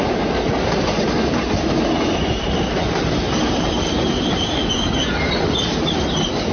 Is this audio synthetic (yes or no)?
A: no